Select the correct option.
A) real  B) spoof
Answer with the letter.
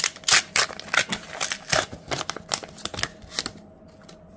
A